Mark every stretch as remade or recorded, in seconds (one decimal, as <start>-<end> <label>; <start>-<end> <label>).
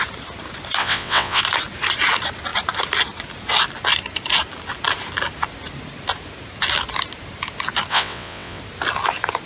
0.0-0.8 recorded; 0.8-1.4 remade; 1.4-7.9 recorded; 7.9-8.6 remade; 8.6-9.5 recorded